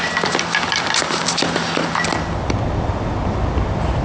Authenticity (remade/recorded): recorded